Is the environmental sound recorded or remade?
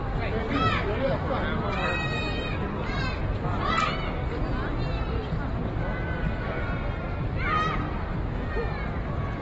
recorded